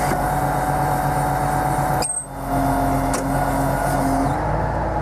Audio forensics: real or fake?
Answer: real